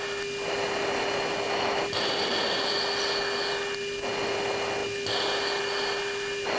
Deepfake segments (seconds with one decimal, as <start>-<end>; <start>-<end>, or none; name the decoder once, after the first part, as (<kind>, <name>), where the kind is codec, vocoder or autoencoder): none